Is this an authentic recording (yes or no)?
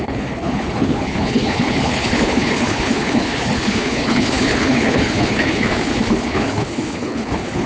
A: no